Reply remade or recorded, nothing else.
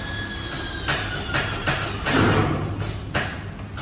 recorded